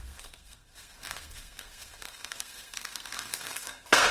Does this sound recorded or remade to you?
remade